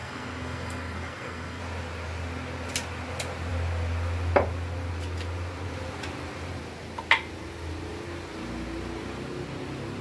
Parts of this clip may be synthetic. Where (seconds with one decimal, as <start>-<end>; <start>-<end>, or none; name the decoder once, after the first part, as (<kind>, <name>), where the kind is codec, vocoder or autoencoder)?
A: 0.0-1.6 (codec, SNAC)